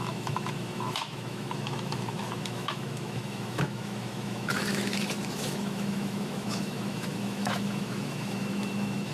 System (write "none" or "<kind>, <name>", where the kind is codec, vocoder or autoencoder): autoencoder, DAC-VAE